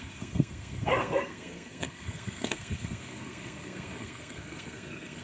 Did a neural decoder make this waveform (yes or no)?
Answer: yes